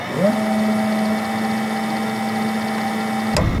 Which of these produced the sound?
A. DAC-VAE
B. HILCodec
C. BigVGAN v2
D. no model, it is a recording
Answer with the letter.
D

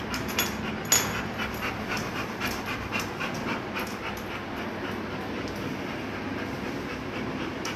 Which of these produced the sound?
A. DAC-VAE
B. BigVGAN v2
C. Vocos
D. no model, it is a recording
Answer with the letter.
D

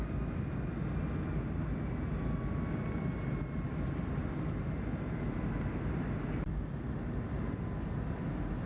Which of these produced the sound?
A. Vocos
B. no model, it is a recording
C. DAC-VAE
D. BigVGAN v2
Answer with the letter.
B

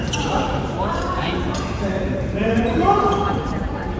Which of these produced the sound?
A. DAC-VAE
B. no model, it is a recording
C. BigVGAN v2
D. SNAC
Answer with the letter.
C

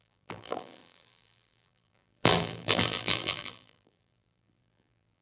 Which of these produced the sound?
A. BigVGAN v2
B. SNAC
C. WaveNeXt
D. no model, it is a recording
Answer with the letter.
A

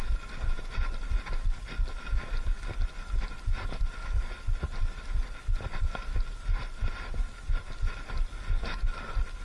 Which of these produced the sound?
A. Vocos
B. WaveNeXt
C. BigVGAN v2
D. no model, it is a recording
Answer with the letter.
D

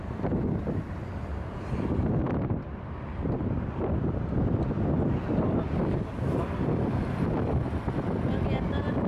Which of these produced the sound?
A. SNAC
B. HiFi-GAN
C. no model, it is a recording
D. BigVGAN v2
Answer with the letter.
D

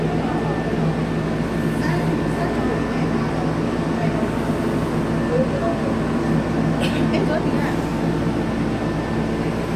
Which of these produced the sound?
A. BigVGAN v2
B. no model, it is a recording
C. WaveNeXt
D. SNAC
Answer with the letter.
B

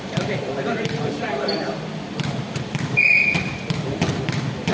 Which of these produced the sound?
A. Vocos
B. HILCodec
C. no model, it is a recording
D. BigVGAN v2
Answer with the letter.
D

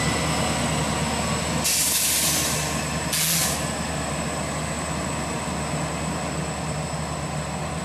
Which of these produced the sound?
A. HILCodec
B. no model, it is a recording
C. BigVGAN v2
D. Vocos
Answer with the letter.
B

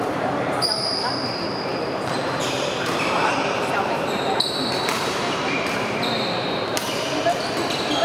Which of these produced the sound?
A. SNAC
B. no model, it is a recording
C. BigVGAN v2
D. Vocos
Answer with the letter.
C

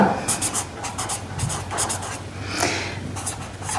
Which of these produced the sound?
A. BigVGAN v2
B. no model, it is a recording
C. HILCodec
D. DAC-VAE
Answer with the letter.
B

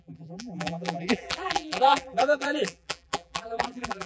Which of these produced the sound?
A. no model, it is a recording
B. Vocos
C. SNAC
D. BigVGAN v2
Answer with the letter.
D